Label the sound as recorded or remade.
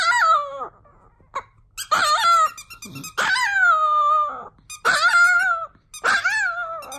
recorded